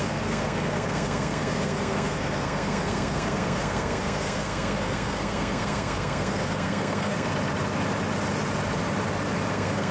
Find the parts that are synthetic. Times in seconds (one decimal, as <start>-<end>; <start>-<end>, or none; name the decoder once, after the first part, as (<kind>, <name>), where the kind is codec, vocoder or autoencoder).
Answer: 0.0-7.3 (codec, SNAC); 9.5-9.9